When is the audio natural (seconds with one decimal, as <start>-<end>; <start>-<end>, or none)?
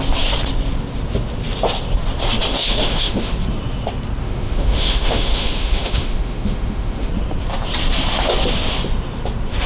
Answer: 0.0-2.5; 3.3-4.2; 7.1-9.7